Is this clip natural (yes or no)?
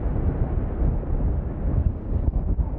yes